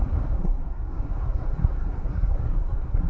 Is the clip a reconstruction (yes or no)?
yes